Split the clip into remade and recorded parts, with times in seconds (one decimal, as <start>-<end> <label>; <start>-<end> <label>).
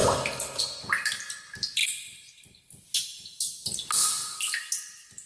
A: 0.0-5.3 recorded